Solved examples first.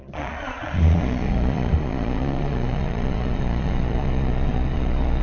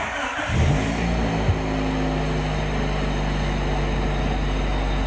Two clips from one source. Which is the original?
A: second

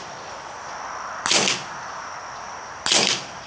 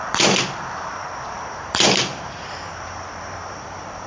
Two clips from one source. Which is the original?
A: first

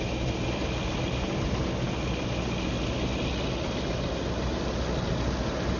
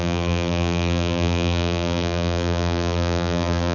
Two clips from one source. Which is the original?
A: first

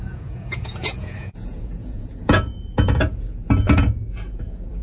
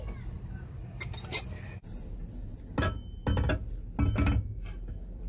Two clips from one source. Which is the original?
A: second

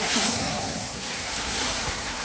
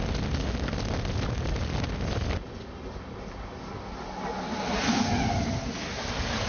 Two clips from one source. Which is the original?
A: second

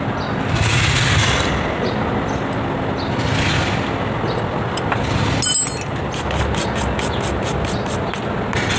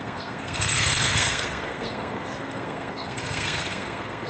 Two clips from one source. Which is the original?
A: first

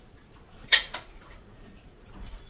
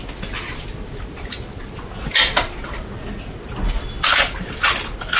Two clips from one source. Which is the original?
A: second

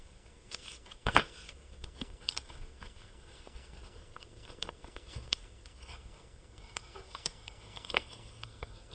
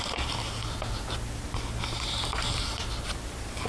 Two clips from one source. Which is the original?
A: second